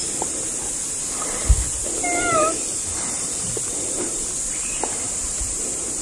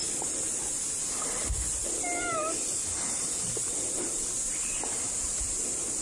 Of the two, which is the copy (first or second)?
first